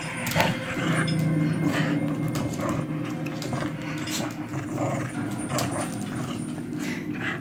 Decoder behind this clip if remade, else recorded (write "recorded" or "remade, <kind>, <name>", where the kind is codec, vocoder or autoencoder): recorded